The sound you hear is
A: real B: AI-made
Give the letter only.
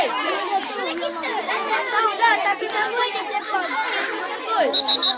A